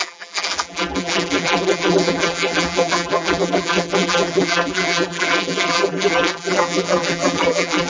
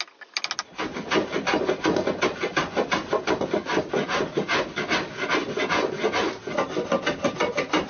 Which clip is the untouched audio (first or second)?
second